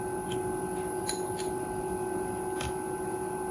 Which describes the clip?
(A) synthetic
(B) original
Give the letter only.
B